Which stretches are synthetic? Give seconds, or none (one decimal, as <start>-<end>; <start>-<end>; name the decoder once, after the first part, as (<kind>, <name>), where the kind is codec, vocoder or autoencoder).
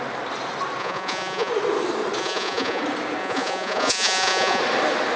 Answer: 0.8-1.5 (vocoder, Vocos); 2.2-2.8; 3.2-4.6